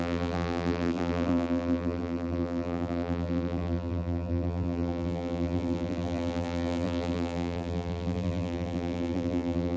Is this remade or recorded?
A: remade